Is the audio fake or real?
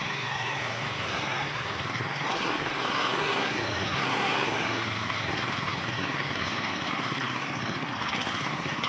fake